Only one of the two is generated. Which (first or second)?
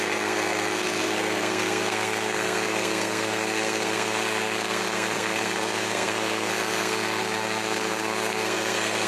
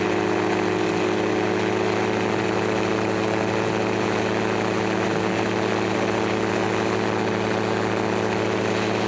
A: first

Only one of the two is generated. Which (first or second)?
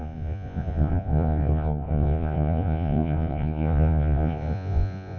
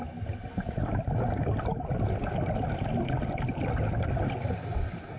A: first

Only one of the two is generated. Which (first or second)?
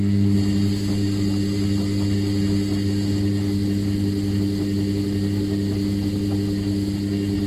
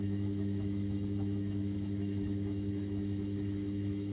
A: second